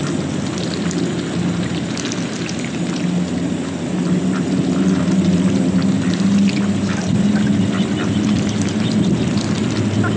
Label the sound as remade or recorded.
recorded